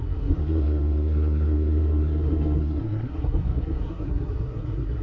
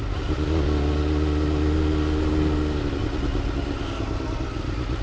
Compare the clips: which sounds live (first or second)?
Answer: second